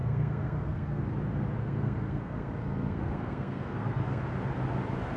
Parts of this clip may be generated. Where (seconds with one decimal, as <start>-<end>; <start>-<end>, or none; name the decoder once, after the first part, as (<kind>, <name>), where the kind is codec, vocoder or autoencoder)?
0.0-1.0 (codec, SNAC); 1.6-4.2